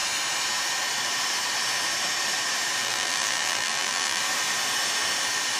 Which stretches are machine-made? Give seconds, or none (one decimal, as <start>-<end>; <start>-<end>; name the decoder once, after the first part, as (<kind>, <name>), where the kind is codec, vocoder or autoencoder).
2.8-4.2 (vocoder, BigVGAN v2)